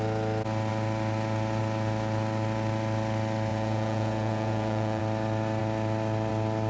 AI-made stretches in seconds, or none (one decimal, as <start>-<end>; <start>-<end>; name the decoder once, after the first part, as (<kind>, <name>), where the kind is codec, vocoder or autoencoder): 3.5-5.0 (vocoder, Vocos)